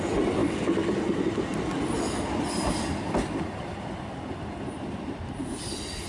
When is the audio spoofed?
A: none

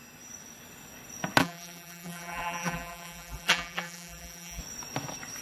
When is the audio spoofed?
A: 1.4-4.6 (vocoder, BigVGAN v2)

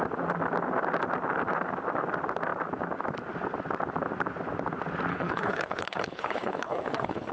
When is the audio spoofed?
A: 5.1-7.3 (codec, HILCodec)

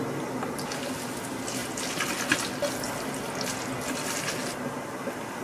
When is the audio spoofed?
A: none

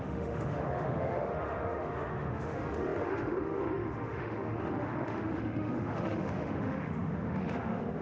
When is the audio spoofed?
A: 0.0-8.0 (autoencoder, DAC-VAE)